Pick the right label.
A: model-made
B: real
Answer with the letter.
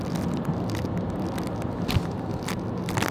B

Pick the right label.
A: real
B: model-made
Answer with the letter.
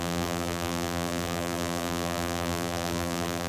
B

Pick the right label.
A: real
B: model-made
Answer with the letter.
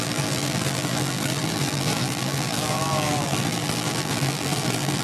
B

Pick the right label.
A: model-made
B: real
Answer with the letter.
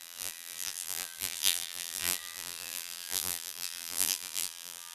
A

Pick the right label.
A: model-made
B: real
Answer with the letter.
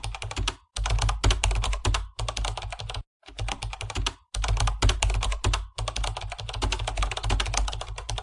B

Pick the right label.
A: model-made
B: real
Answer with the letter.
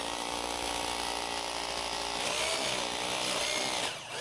B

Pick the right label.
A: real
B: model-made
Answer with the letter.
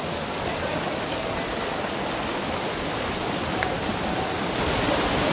B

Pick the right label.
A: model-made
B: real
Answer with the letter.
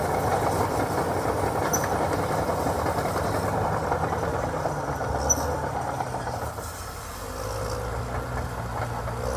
B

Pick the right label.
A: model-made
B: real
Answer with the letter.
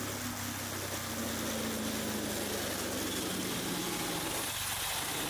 B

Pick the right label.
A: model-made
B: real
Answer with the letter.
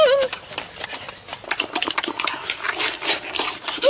B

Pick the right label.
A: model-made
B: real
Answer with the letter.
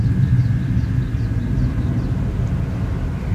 B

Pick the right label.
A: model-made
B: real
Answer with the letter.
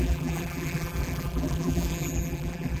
A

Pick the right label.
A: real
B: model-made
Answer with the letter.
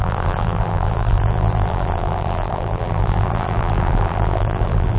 B